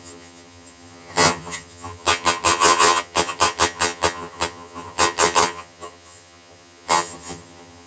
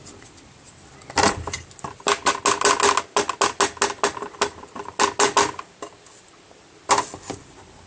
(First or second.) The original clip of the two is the second